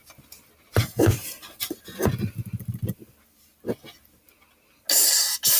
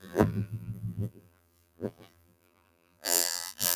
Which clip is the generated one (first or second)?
second